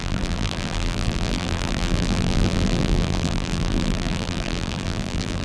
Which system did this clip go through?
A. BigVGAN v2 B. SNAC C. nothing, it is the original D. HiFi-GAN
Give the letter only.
A